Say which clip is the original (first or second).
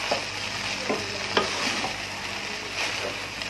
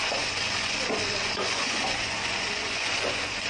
first